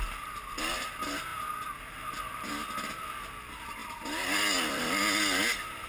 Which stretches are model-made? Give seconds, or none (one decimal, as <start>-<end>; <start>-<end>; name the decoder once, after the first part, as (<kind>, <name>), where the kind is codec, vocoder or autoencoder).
none